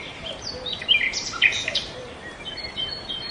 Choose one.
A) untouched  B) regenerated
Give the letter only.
B